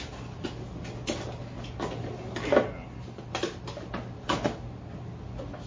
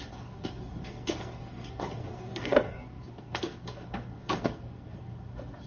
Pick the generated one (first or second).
second